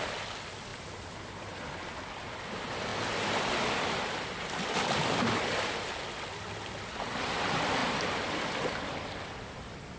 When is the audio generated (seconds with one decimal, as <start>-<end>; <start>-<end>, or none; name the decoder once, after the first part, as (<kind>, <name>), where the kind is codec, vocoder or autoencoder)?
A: none